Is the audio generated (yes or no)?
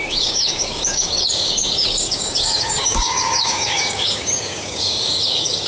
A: yes